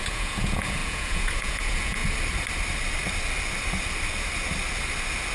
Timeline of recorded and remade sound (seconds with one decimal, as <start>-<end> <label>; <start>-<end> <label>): 0.0-2.0 remade; 2.0-5.3 recorded